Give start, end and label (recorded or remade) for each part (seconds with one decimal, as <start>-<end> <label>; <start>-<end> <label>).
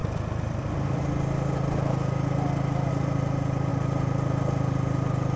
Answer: 0.0-5.4 recorded